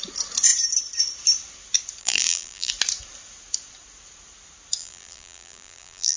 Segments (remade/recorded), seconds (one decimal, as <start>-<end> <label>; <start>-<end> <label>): 0.0-2.0 recorded; 2.0-2.7 remade; 2.7-4.8 recorded; 4.8-6.2 remade